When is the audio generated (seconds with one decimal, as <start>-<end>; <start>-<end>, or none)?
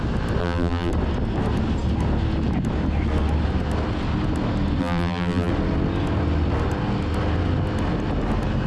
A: 0.4-0.9; 4.8-5.5